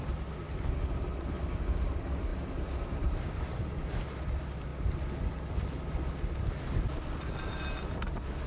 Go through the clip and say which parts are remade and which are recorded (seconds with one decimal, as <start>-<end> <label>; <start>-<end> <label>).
0.0-2.3 recorded; 2.3-3.4 remade; 3.4-8.5 recorded